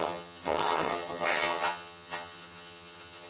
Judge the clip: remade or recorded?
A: remade